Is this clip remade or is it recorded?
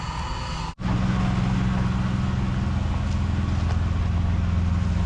recorded